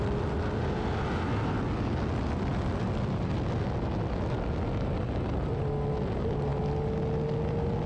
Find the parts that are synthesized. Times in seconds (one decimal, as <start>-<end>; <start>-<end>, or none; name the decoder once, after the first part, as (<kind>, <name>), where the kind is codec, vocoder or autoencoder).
none